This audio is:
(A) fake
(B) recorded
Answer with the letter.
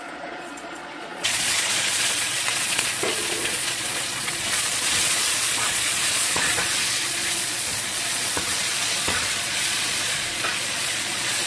A